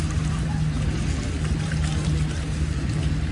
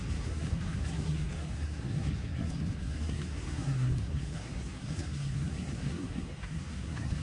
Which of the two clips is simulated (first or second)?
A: second